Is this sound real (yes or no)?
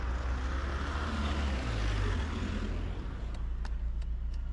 yes